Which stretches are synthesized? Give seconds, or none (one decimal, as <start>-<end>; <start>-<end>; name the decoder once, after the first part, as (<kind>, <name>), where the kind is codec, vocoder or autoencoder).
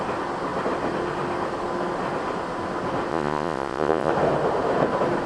3.1-4.1 (vocoder, Vocos)